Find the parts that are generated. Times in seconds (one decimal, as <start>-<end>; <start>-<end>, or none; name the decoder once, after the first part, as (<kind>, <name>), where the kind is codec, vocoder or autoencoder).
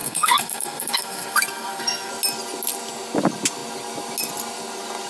0.0-2.1 (codec, SNAC)